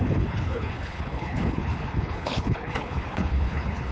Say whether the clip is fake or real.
fake